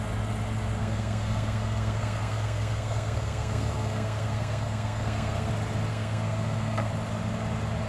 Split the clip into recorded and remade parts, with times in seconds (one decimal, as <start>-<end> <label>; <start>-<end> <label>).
0.0-0.8 recorded; 0.8-5.5 remade; 5.5-5.9 recorded; 5.9-6.9 remade; 6.9-7.9 recorded

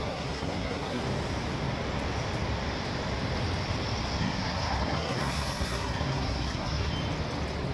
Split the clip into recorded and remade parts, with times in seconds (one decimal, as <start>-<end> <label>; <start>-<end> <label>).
0.0-1.0 remade; 1.0-4.2 recorded; 4.2-6.9 remade; 6.9-7.7 recorded

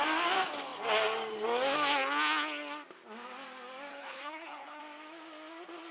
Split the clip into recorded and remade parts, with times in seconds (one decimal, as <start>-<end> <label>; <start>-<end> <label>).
0.0-3.9 recorded; 3.9-4.8 remade; 4.8-5.9 recorded

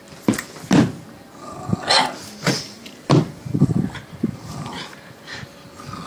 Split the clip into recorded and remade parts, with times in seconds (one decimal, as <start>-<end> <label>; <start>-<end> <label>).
0.0-6.1 remade

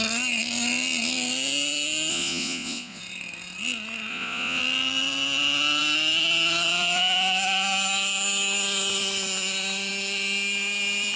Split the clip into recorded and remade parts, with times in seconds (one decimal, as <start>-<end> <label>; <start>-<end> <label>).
0.0-2.1 recorded; 2.1-3.0 remade; 3.0-4.1 recorded; 4.1-4.6 remade; 4.6-11.2 recorded

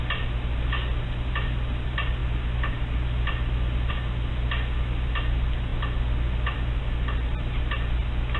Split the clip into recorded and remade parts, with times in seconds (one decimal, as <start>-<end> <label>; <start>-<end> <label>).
0.0-8.4 recorded